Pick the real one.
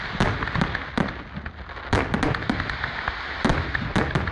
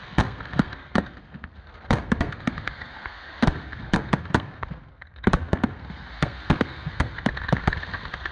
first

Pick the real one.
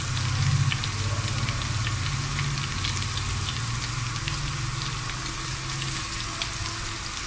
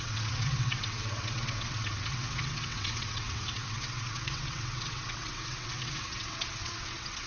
first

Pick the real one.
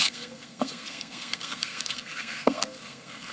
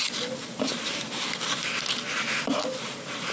second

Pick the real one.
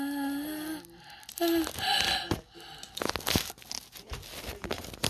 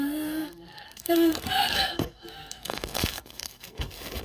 first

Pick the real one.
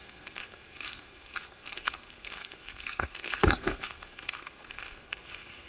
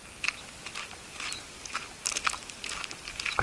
second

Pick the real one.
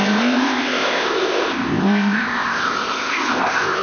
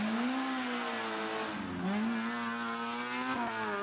second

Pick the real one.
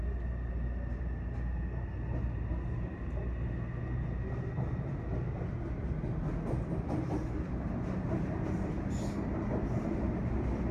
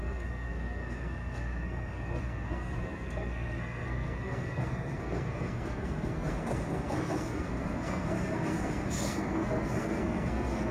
first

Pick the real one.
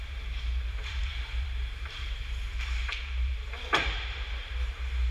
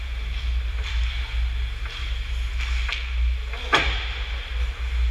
second